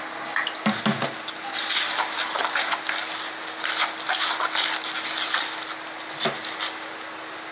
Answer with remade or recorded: recorded